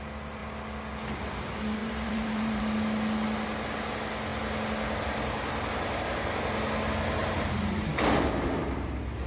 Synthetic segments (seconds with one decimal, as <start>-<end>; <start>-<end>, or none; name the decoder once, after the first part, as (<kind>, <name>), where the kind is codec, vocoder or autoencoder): 1.8-2.6 (vocoder, BigVGAN v2); 7.2-8.3